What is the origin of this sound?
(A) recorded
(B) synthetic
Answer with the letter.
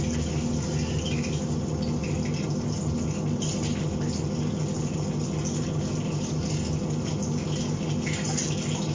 A